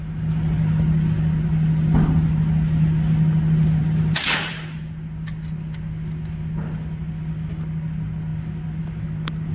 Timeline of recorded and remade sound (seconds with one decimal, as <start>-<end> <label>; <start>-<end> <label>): 0.0-9.5 recorded